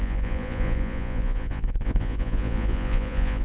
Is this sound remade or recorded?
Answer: remade